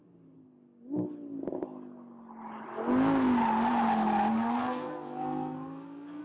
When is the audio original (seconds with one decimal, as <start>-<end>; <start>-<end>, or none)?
0.0-4.3